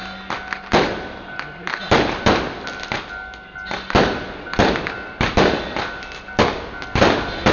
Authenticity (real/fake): real